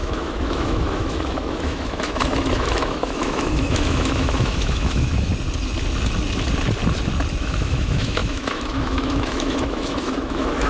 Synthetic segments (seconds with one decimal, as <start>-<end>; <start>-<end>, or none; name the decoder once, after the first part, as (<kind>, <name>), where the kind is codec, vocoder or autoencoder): 0.0-5.3 (autoencoder, DAC-VAE); 7.4-10.7